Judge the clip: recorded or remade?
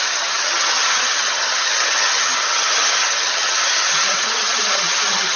remade